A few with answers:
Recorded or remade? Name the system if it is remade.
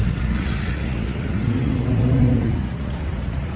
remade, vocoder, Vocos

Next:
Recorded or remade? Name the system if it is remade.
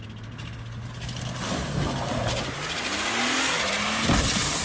recorded